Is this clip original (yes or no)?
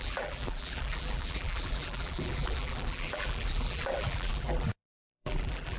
no